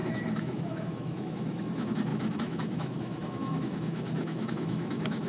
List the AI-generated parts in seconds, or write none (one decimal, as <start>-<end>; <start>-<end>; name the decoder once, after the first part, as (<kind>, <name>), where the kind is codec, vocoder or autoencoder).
0.0-5.3 (autoencoder, DAC-VAE)